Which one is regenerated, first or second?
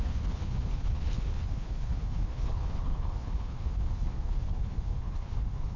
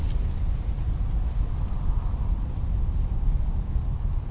first